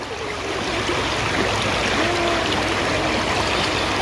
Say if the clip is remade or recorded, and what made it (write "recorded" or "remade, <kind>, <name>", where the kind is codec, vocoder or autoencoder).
recorded